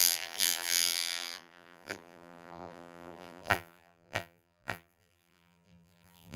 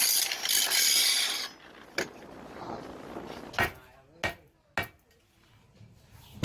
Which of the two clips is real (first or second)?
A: second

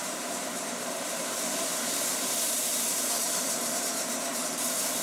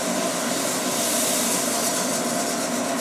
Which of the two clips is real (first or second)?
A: second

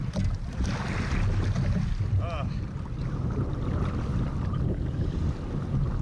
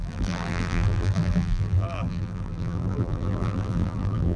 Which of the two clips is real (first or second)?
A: first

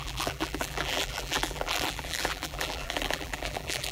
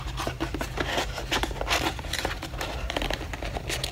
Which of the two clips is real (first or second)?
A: second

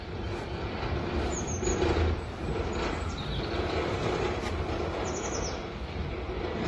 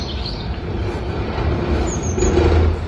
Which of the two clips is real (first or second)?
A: second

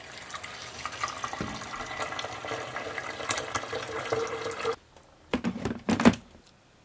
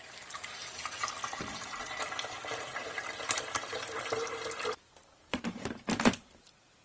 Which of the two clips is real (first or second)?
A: first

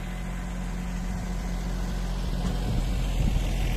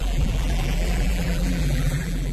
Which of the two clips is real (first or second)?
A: first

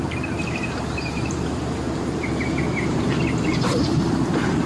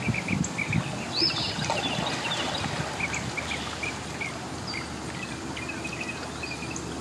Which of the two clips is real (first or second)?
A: second